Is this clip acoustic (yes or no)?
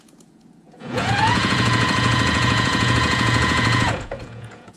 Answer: no